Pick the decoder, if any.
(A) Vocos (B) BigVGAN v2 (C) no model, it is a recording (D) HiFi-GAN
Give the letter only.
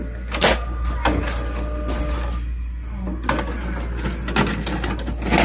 C